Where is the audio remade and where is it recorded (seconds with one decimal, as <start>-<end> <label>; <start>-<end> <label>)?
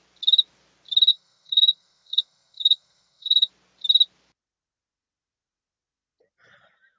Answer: 0.0-1.1 recorded; 1.1-3.5 remade; 3.5-7.0 recorded